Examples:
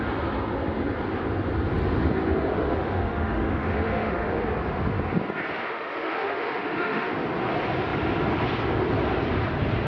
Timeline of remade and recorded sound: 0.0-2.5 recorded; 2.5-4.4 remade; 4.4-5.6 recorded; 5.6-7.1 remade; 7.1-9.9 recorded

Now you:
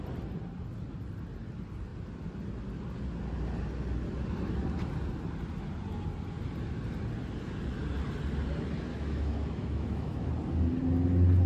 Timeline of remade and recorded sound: 0.0-8.9 recorded; 8.9-10.3 remade; 10.3-11.5 recorded

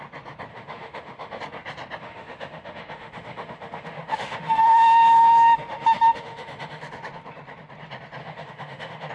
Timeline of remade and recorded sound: 0.0-0.5 recorded; 0.5-1.4 remade; 1.4-2.0 recorded; 2.0-6.8 remade; 6.8-8.2 recorded; 8.2-9.1 remade

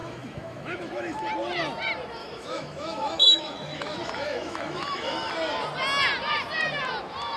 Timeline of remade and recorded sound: 0.0-1.3 remade; 1.3-2.2 recorded; 2.2-5.3 remade; 5.3-7.4 recorded

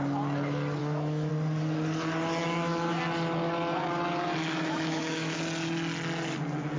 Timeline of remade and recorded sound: 0.0-0.8 recorded; 0.8-1.3 remade; 1.3-2.4 recorded; 2.4-3.0 remade; 3.0-4.4 recorded; 4.4-5.4 remade; 5.4-6.8 recorded

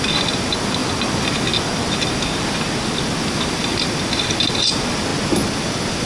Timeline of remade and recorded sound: 0.0-6.1 recorded